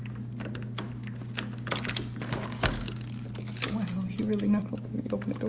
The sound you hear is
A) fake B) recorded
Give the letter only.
B